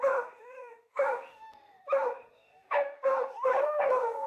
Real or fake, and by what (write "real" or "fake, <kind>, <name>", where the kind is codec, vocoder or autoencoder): fake, autoencoder, DAC-VAE